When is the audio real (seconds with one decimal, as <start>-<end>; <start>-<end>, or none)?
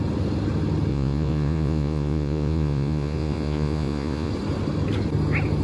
0.0-0.9; 4.3-5.6